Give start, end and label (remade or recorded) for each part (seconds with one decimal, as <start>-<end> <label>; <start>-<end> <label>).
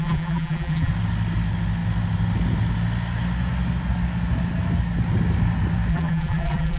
0.0-0.9 remade; 0.9-5.9 recorded; 5.9-6.8 remade